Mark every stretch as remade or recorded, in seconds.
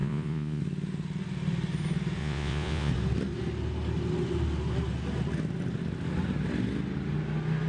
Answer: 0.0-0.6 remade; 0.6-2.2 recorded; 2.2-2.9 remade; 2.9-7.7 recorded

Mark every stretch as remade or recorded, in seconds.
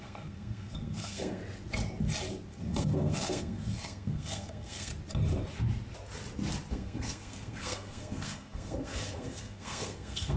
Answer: 0.0-1.4 remade; 1.4-2.5 recorded; 2.5-4.9 remade; 4.9-6.7 recorded; 6.7-10.4 remade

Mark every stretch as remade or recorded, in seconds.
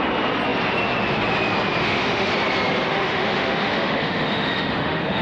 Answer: 0.0-1.8 recorded; 1.8-2.3 remade; 2.3-2.9 recorded; 2.9-5.2 remade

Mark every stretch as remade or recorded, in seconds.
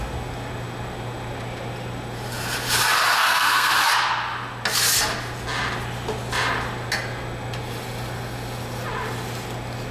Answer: 0.0-3.2 recorded; 3.2-3.7 remade; 3.7-9.9 recorded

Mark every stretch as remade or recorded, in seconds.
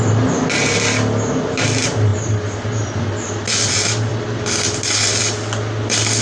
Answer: 0.0-6.2 recorded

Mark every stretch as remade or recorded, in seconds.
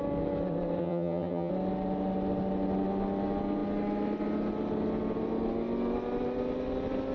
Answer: 0.0-0.8 recorded; 0.8-1.5 remade; 1.5-7.1 recorded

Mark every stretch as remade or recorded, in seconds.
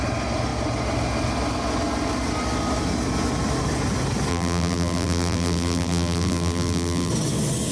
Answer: 0.0-4.3 recorded; 4.3-7.1 remade; 7.1-7.7 recorded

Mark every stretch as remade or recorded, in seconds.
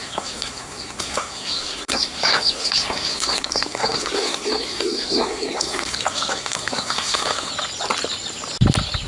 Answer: 0.0-7.5 remade; 7.5-9.1 recorded